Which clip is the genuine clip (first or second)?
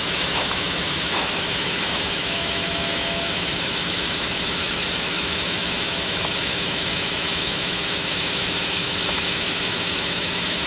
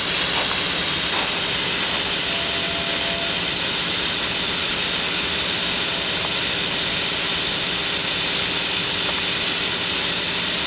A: second